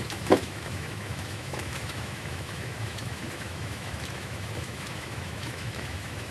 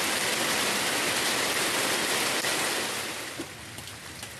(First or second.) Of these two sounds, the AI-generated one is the first